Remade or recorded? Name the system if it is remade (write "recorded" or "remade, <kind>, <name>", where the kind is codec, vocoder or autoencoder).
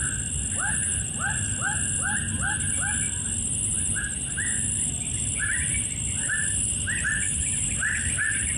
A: recorded